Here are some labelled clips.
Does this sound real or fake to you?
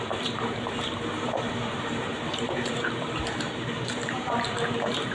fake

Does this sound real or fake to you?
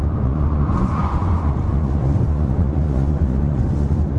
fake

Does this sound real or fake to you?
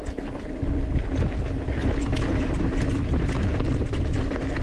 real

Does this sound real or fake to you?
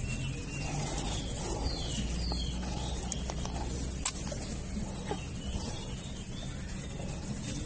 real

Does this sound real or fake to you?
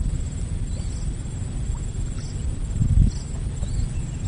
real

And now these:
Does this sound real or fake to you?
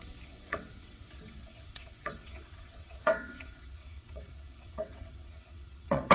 fake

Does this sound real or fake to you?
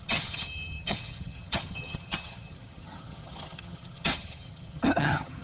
fake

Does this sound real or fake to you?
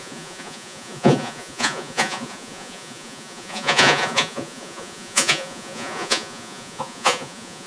fake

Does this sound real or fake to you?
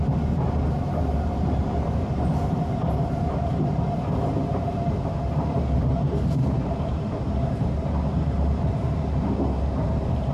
fake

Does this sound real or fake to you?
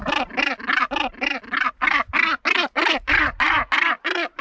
real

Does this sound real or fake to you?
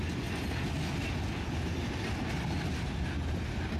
real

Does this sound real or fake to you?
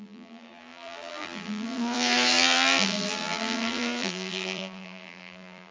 fake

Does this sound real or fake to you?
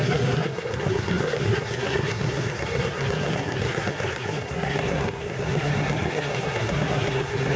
fake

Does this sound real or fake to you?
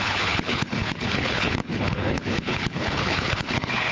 fake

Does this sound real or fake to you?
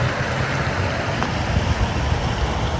real